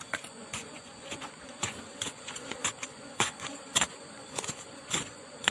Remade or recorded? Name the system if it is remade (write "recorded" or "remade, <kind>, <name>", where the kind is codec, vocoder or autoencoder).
remade, vocoder, Vocos